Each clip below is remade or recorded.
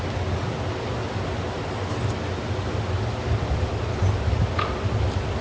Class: recorded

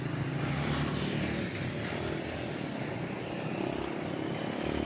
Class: recorded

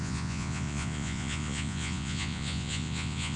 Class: remade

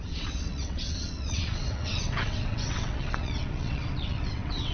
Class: remade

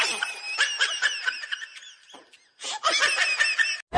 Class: recorded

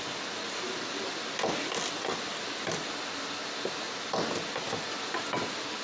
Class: recorded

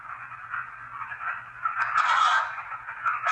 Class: remade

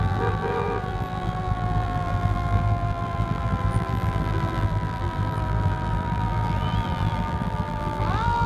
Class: remade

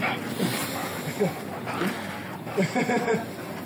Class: recorded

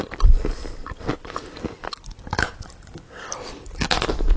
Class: recorded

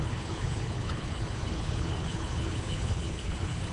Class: remade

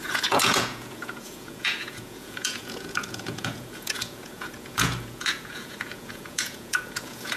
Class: remade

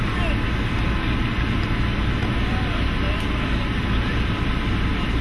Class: recorded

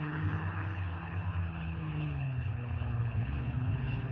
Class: remade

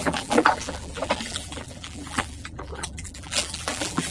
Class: remade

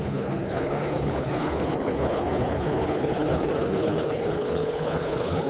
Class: remade